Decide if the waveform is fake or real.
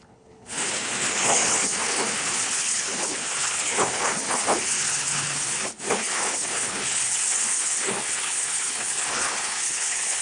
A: fake